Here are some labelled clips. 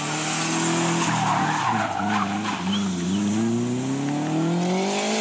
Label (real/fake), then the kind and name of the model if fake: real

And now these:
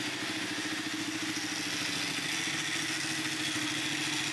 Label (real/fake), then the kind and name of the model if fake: real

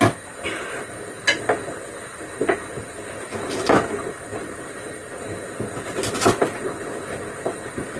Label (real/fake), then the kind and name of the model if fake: real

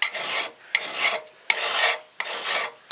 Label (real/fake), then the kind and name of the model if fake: real